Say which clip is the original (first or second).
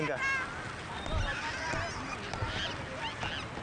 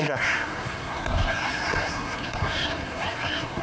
first